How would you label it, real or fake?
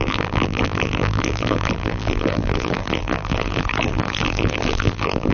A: fake